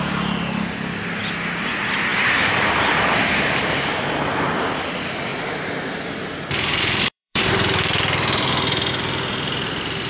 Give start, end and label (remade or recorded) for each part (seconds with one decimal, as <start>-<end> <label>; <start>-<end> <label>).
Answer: 0.0-2.1 recorded; 2.1-2.7 remade; 2.7-5.3 recorded; 5.3-8.9 remade; 8.9-10.1 recorded